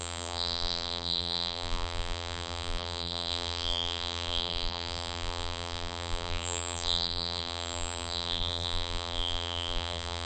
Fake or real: fake